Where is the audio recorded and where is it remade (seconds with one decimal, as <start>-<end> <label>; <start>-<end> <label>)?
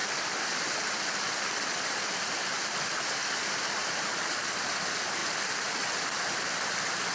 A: 0.0-7.1 recorded